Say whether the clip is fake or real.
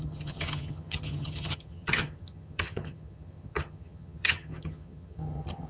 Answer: fake